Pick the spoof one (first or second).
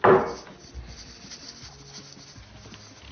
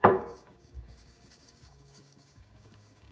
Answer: second